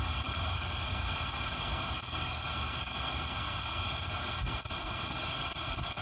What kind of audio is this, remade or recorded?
remade